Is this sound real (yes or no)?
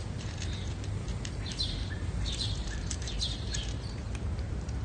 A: no